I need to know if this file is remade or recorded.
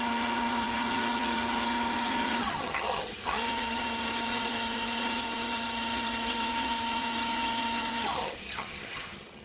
remade